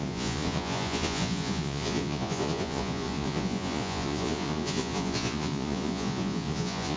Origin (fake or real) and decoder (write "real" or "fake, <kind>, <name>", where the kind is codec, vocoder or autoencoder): fake, vocoder, Vocos